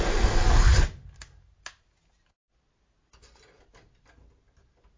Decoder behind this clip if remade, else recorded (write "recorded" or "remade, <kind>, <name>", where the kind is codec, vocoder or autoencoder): recorded